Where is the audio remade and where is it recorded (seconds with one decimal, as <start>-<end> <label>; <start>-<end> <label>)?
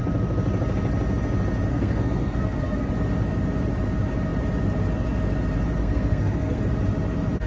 0.0-1.7 recorded; 1.7-2.9 remade; 2.9-5.8 recorded; 5.8-6.6 remade; 6.6-7.5 recorded